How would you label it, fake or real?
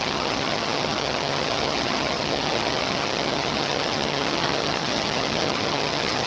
fake